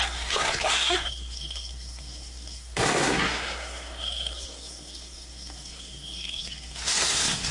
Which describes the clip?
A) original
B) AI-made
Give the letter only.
B